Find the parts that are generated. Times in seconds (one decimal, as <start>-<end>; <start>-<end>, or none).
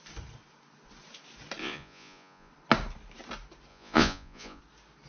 1.6-2.5; 3.7-4.6